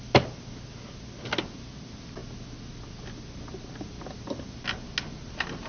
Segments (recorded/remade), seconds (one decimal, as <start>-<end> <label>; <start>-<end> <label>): 0.0-5.7 recorded